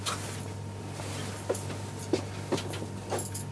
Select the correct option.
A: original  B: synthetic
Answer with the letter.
A